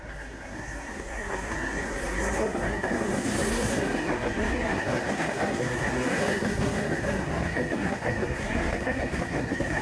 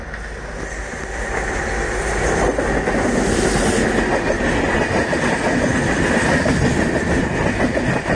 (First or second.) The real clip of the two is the second